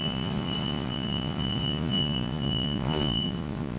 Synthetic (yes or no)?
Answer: yes